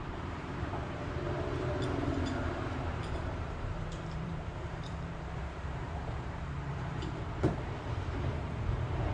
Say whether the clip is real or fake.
fake